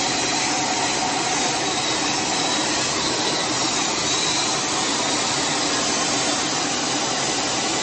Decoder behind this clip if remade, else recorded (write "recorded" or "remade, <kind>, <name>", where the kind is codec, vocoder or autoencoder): recorded